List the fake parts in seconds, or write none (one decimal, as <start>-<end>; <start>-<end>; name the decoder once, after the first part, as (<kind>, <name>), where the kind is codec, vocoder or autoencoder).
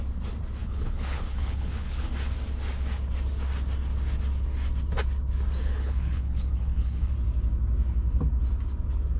0.6-2.1 (codec, HILCodec); 5.6-7.1